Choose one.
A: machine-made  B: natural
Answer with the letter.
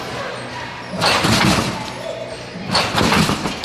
B